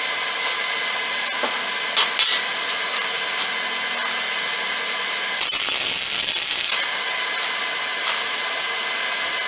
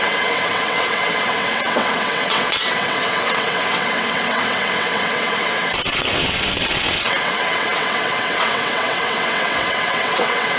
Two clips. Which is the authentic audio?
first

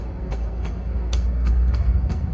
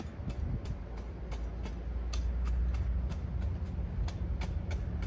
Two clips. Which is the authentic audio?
second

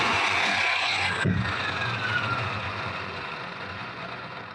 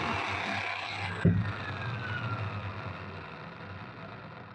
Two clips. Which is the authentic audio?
second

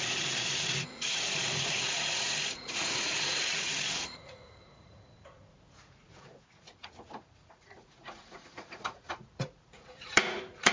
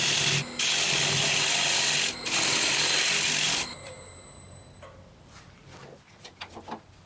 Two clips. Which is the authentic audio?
second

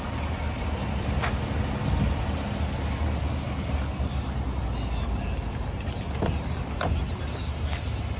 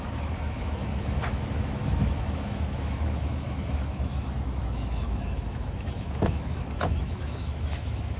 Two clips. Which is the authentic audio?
first